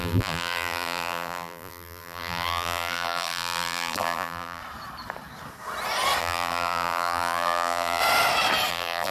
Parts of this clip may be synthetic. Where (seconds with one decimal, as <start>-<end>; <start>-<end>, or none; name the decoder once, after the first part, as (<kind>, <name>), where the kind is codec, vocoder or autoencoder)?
0.0-4.6 (vocoder, BigVGAN v2); 6.2-8.0; 8.7-9.1